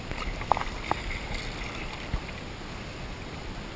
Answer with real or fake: real